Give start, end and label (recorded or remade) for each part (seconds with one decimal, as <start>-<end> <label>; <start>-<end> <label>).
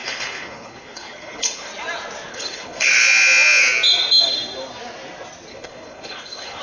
0.0-1.7 remade; 1.7-2.3 recorded; 2.3-2.9 remade; 2.9-5.5 recorded; 5.5-6.6 remade